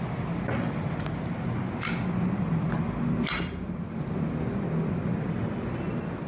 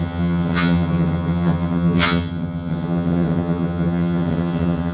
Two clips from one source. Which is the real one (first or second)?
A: first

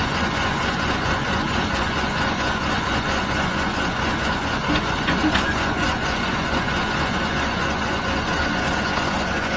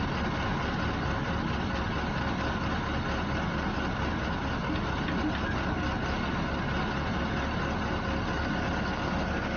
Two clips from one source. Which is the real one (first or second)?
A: second